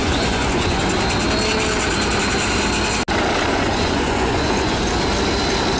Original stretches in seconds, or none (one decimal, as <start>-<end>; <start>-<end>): 0.8-3.5; 4.9-5.8

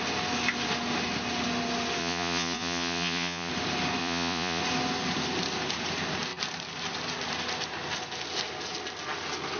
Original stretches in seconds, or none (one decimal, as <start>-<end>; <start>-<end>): 0.0-2.0; 3.5-4.0; 4.6-9.6